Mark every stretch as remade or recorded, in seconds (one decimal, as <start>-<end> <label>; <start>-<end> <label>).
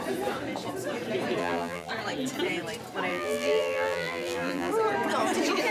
0.0-1.4 recorded; 1.4-1.9 remade; 1.9-3.1 recorded; 3.1-4.7 remade; 4.7-5.7 recorded